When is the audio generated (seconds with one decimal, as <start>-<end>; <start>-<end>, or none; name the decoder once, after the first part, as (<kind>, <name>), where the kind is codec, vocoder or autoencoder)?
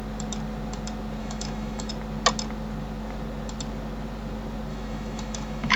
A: 1.2-1.9 (autoencoder, DAC-VAE); 4.7-5.8